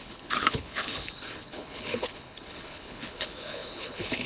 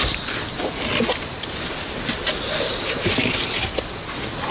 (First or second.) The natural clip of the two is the second